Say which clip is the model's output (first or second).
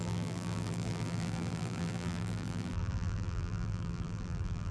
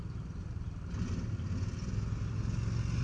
first